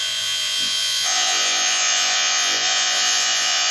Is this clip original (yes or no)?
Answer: no